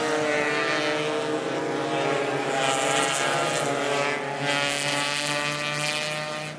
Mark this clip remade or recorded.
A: recorded